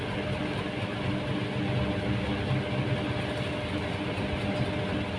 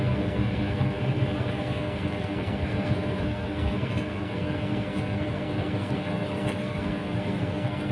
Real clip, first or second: first